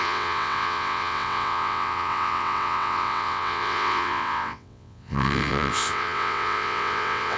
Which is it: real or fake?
fake